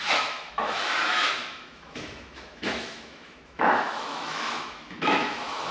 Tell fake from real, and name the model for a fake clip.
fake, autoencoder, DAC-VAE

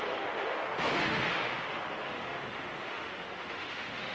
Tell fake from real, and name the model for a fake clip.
fake, autoencoder, DAC-VAE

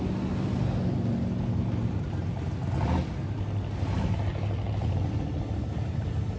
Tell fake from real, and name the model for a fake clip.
real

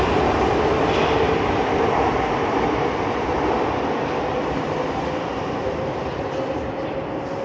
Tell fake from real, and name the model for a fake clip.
real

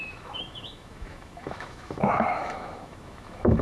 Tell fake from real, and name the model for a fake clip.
fake, autoencoder, DAC-VAE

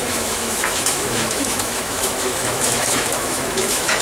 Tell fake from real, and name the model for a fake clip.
fake, autoencoder, DAC-VAE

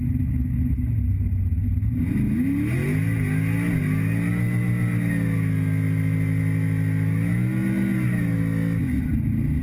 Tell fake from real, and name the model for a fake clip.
real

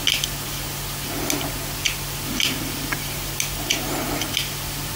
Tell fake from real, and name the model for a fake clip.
real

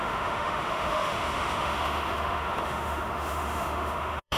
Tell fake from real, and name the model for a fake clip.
fake, autoencoder, DAC-VAE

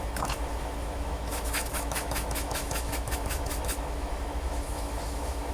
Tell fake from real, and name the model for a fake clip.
fake, autoencoder, DAC-VAE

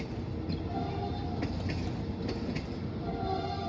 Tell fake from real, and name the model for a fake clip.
real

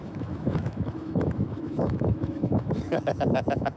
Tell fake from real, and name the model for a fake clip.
fake, autoencoder, DAC-VAE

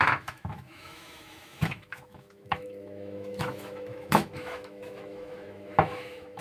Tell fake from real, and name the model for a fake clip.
fake, autoencoder, DAC-VAE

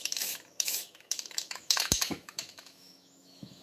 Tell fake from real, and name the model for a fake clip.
fake, autoencoder, DAC-VAE